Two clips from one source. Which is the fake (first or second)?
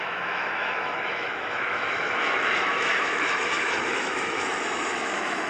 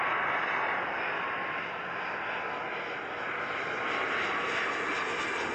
first